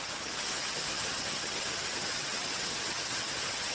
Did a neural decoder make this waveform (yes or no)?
yes